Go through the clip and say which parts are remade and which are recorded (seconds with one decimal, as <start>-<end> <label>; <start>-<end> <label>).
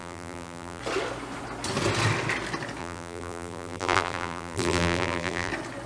0.0-0.8 remade; 0.8-2.8 recorded; 2.8-5.5 remade; 5.5-5.9 recorded